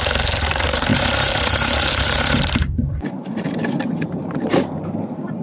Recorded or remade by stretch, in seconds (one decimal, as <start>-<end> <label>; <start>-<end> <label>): 0.0-5.4 remade